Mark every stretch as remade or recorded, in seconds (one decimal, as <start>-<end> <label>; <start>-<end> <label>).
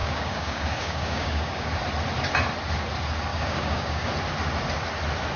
0.0-1.8 remade; 1.8-3.3 recorded; 3.3-4.1 remade; 4.1-5.4 recorded